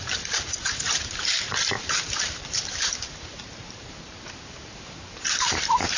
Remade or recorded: remade